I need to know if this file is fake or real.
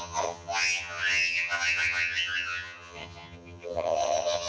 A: fake